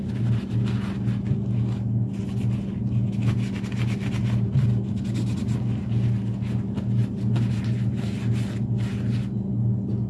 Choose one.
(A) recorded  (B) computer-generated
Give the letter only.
A